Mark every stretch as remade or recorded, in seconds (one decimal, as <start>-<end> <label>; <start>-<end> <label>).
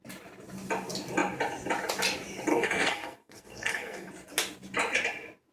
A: 0.0-2.5 recorded; 2.5-4.1 remade; 4.1-5.5 recorded